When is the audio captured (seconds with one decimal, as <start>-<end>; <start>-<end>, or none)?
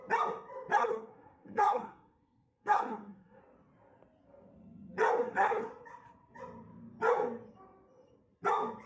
0.0-0.8; 3.4-5.2; 5.7-8.9